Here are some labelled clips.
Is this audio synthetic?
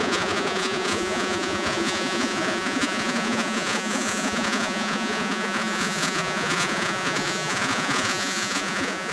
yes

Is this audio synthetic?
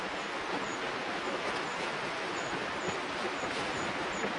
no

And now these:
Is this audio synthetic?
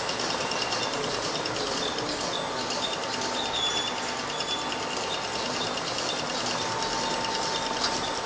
no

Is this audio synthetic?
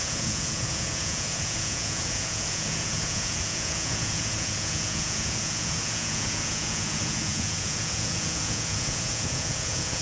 yes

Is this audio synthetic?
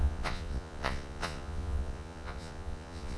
yes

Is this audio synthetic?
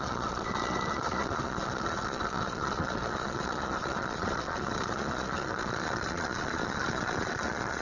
yes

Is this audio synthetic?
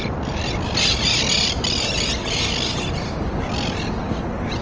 no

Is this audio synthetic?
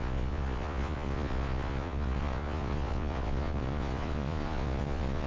yes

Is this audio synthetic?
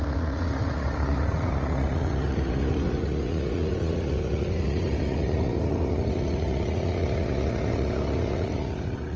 yes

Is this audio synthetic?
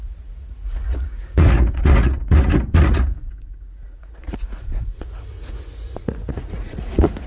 yes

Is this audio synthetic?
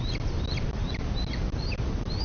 no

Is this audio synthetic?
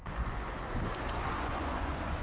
yes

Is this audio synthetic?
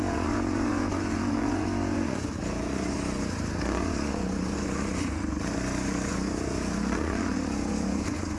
yes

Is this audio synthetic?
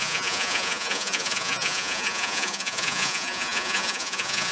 yes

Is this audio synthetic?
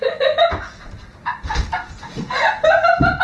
no